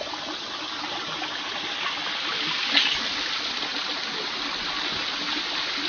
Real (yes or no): yes